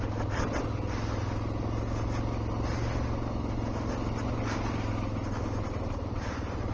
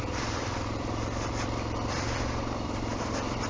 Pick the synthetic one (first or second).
second